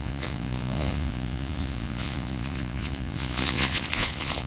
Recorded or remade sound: remade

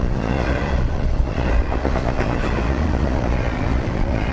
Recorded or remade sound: remade